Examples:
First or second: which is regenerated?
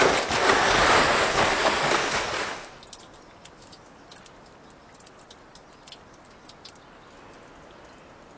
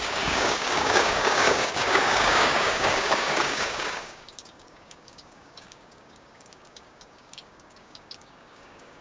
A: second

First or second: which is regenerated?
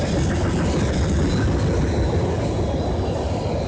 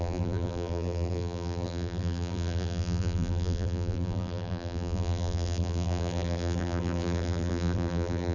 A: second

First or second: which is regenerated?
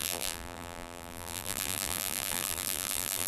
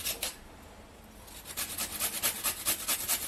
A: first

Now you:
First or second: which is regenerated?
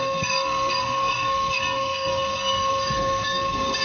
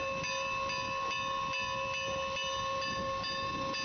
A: first